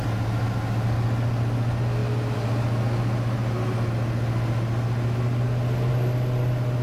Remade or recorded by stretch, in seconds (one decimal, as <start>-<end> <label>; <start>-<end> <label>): 0.0-6.8 recorded